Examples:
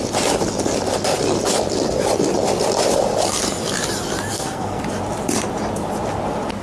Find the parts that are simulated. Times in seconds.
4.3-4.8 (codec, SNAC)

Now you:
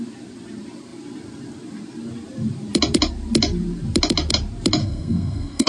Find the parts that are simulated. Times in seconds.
4.8-5.7 (codec, SNAC)

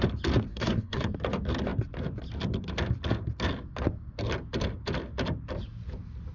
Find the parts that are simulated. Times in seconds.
0.5-1.1 (codec, SNAC)

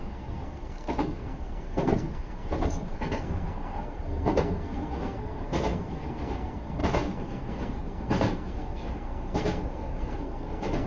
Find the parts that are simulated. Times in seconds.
0.0-10.9 (codec, SNAC)